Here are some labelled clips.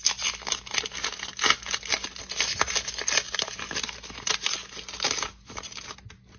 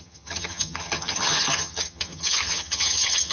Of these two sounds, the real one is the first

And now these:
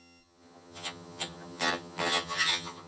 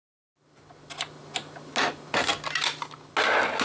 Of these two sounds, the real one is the second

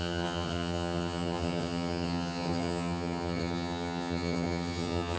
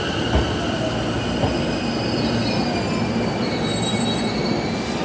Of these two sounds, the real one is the second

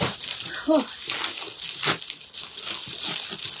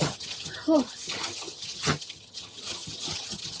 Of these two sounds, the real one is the first